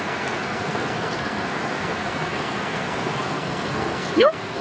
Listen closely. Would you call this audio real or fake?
fake